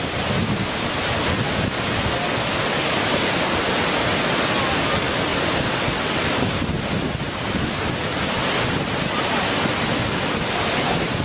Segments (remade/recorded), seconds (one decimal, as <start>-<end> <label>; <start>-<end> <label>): 0.0-11.2 recorded